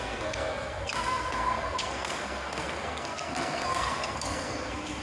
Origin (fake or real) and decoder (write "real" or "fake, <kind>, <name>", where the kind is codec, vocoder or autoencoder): fake, codec, SNAC